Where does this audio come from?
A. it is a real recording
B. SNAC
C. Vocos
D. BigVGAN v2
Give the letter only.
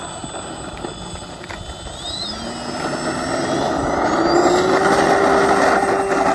A